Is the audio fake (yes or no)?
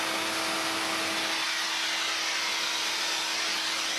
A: no